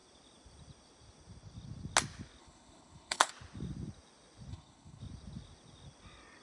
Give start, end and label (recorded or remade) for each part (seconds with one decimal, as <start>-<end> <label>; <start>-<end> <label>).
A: 0.0-2.4 recorded; 2.4-3.3 remade; 3.3-4.5 recorded; 4.5-5.0 remade; 5.0-6.4 recorded